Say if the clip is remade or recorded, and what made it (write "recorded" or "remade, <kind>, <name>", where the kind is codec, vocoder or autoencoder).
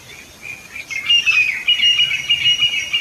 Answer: recorded